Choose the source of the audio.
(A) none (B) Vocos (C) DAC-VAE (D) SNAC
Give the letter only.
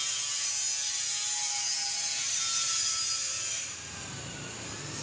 A